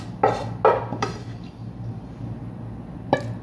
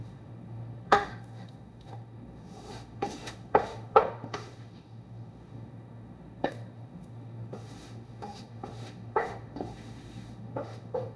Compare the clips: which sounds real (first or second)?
first